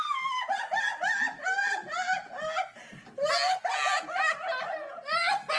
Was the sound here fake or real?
real